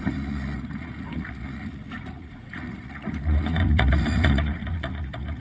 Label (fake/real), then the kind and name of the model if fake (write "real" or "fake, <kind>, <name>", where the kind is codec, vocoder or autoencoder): fake, vocoder, Vocos